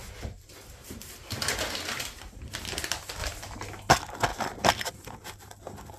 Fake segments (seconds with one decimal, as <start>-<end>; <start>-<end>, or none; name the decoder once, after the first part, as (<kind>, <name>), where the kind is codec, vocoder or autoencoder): 0.0-2.6 (vocoder, BigVGAN v2)